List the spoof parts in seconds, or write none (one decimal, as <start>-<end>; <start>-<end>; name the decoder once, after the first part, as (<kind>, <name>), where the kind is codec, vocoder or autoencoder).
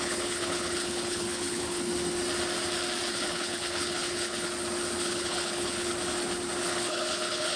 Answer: 0.0-1.9 (codec, HILCodec); 3.1-4.5; 5.0-5.9; 6.6-7.6